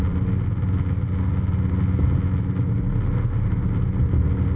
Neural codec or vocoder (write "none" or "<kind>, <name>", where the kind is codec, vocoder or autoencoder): none